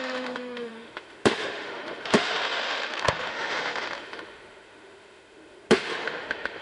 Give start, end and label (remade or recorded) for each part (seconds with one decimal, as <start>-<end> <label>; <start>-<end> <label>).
0.0-6.6 remade